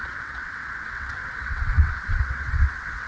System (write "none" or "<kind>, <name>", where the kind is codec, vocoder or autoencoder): vocoder, WaveNeXt